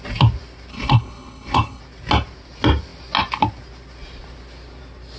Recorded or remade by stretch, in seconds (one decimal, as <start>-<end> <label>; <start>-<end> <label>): 0.0-0.7 recorded; 0.7-1.8 remade; 1.8-5.2 recorded